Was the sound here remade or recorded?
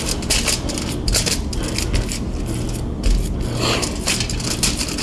recorded